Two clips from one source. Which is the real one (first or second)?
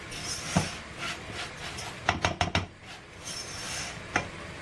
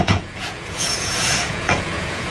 first